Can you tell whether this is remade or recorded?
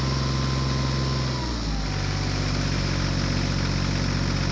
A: recorded